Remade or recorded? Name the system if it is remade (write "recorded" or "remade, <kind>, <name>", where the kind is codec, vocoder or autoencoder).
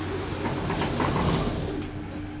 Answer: recorded